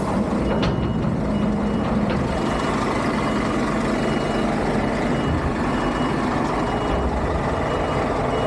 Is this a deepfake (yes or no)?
no